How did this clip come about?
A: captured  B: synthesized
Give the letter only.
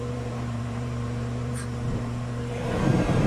B